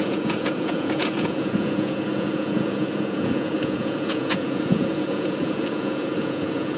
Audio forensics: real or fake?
fake